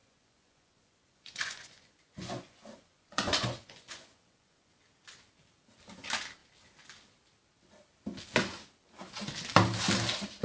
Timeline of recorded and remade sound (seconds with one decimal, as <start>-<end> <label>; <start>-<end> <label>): 0.0-4.8 remade; 4.8-10.4 recorded